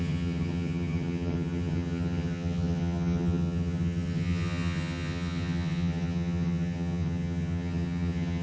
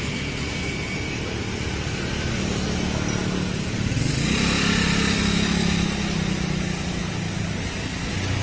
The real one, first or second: second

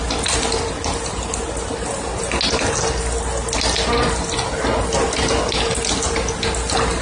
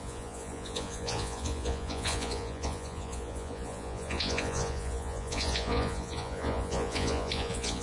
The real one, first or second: first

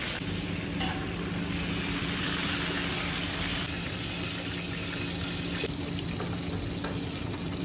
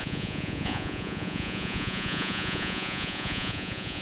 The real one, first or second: first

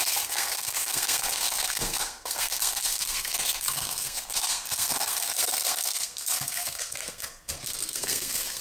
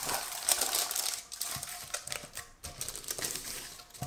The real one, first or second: second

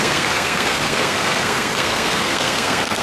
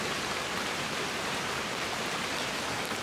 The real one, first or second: second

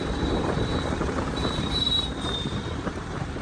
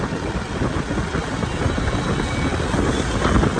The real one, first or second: second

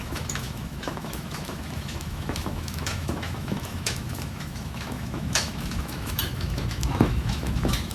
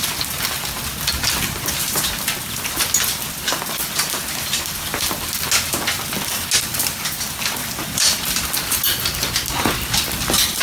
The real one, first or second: second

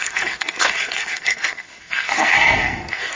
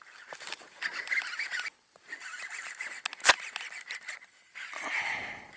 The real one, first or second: second